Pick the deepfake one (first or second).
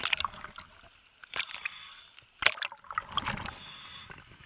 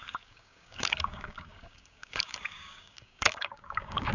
second